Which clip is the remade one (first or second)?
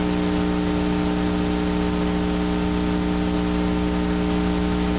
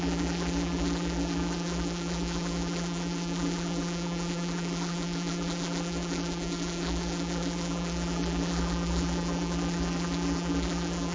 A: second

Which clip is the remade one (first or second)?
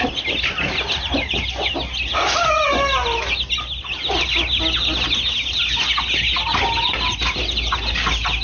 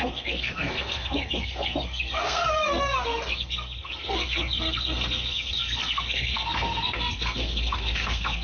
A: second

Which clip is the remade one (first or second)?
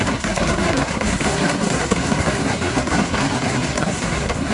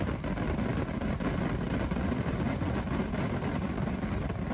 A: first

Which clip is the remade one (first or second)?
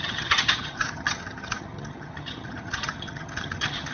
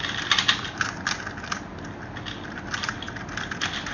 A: first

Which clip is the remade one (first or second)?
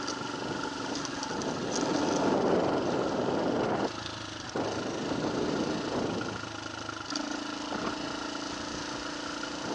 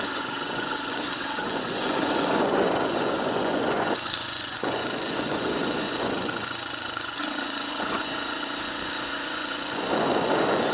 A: second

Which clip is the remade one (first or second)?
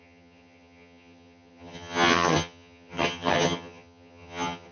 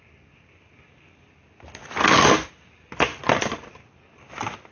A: first